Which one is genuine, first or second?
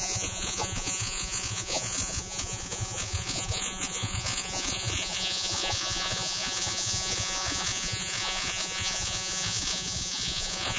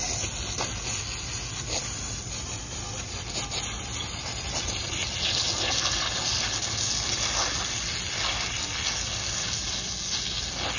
second